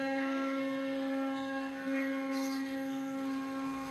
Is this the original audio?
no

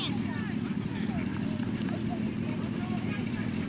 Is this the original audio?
yes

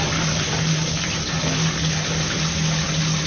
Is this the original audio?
yes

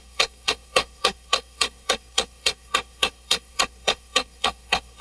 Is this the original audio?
no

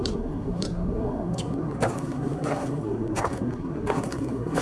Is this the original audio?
no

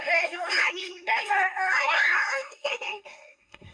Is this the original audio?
no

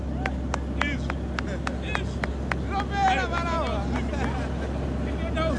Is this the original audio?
yes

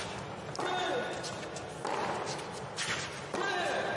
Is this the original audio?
yes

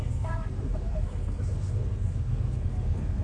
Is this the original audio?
no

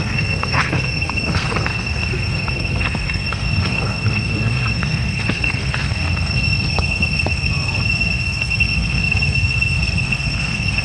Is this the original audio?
no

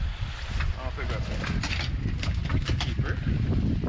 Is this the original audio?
yes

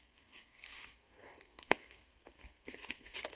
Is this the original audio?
no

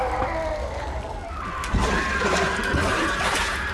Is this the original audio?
yes